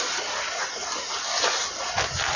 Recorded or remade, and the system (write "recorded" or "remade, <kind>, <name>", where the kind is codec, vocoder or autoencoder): recorded